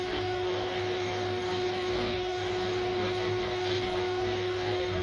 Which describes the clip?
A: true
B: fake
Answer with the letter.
B